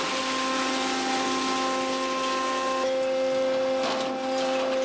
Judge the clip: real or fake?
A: real